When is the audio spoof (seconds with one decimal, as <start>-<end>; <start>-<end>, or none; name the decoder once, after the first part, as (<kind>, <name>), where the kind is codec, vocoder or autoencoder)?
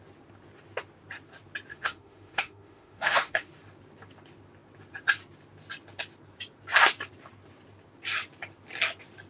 1.7-3.5 (autoencoder, DAC-VAE)